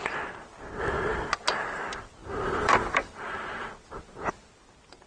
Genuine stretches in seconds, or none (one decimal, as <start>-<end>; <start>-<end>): 0.0-2.2; 3.7-5.1